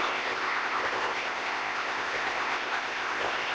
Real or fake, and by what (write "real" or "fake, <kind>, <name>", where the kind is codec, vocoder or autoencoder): fake, codec, ZipCodec